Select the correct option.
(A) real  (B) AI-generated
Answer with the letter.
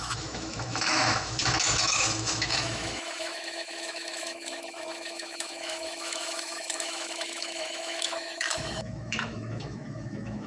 B